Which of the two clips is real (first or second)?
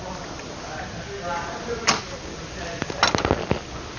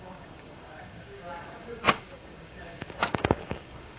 first